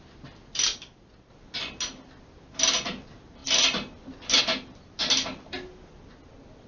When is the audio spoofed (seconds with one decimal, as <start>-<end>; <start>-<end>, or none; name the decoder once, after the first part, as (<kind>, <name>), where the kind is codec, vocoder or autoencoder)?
none